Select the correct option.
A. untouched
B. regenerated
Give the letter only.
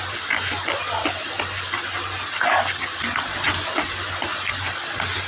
A